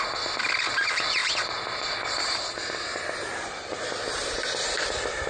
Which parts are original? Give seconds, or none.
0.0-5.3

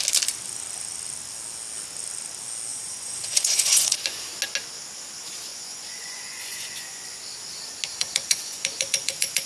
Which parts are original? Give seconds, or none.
0.0-2.7; 4.3-5.5; 7.2-7.9

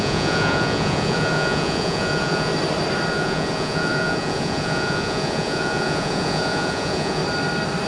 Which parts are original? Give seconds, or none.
2.5-3.1; 7.2-7.9